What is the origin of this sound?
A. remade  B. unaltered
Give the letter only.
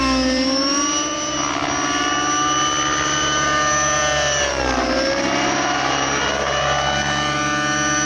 B